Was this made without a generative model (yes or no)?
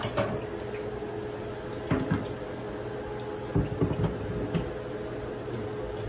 yes